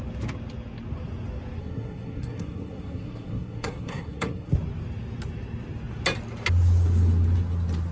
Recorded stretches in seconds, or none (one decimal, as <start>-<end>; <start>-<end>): 0.0-1.6; 4.5-7.9

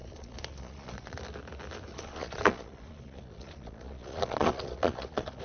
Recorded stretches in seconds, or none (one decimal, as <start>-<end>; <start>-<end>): 1.2-1.9

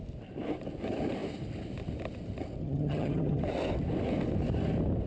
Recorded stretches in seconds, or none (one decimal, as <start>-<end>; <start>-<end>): 0.0-2.6; 3.4-5.1

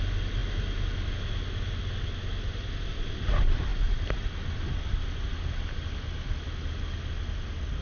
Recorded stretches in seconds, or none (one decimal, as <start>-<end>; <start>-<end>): 0.0-7.8

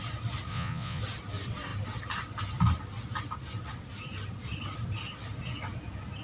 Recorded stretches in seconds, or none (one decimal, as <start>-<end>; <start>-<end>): 0.0-0.5; 1.0-6.2